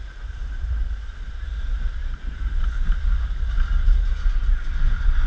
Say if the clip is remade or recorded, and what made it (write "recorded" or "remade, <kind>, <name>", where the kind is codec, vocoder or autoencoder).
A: recorded